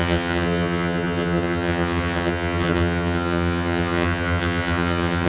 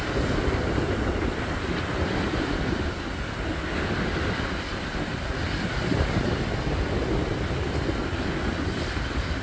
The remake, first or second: first